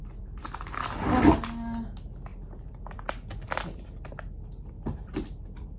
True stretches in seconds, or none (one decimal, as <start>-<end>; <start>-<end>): 0.0-5.8